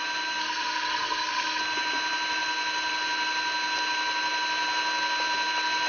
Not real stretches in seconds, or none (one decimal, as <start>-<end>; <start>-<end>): 0.4-1.6